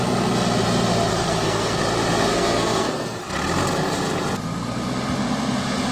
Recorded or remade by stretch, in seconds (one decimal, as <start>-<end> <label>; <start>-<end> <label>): 0.0-1.1 recorded; 1.1-1.8 remade; 1.8-2.3 recorded; 2.3-3.2 remade; 3.2-5.9 recorded